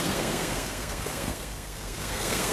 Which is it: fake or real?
fake